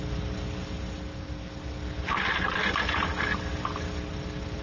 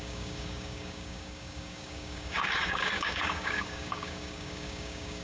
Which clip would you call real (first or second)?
first